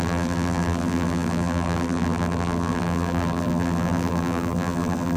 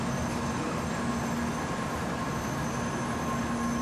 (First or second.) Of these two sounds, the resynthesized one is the first